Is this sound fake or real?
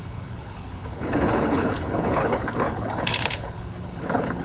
fake